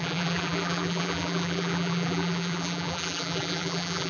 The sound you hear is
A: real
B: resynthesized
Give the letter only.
B